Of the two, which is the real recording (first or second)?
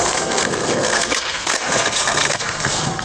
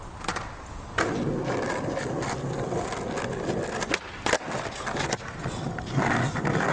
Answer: second